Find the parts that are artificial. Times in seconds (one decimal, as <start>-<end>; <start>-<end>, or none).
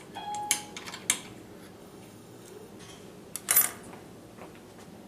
1.8-2.7